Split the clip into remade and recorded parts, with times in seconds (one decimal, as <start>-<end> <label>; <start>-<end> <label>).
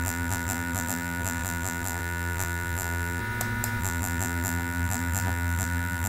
0.0-3.2 remade; 3.2-3.8 recorded; 3.8-6.1 remade